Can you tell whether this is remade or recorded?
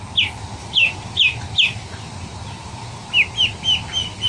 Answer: recorded